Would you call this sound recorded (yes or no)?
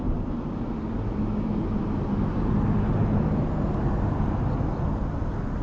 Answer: yes